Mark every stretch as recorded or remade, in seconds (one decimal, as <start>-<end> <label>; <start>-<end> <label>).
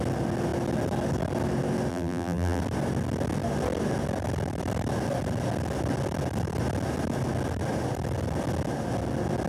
0.0-1.9 recorded; 1.9-2.6 remade; 2.6-9.5 recorded